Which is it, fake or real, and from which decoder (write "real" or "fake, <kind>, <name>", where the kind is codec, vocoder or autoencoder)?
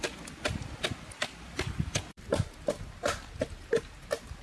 fake, vocoder, BigVGAN v2